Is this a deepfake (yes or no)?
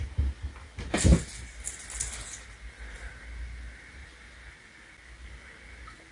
no